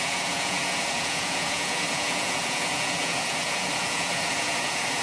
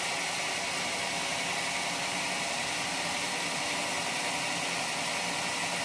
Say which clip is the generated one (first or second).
first